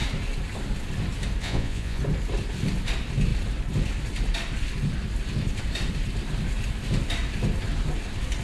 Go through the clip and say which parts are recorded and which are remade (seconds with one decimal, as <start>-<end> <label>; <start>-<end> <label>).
0.0-1.4 recorded; 1.4-2.0 remade; 2.0-8.4 recorded